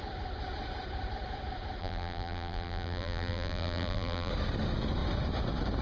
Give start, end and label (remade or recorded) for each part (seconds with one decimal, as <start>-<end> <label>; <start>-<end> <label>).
0.0-1.8 recorded; 1.8-4.3 remade; 4.3-5.8 recorded